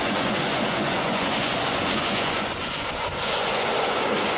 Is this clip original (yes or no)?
no